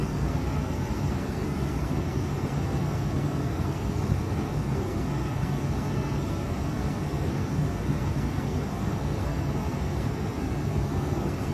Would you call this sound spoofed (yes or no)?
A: yes